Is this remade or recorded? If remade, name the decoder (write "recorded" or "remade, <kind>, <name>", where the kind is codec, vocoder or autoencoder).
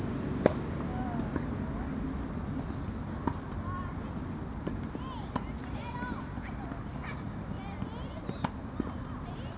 recorded